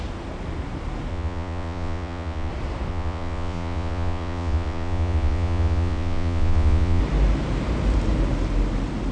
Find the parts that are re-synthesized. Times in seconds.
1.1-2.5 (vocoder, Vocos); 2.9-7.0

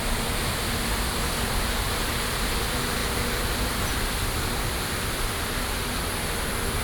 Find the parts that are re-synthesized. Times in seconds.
none

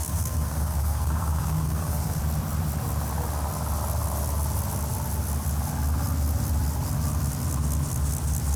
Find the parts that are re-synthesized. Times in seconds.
0.0-2.2 (codec, SNAC)

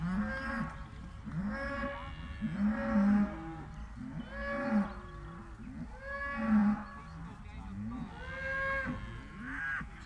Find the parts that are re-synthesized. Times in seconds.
none

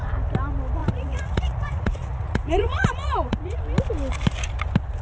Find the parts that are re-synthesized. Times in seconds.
0.8-3.6 (vocoder, Vocos)